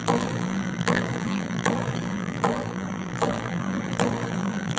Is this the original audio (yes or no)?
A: no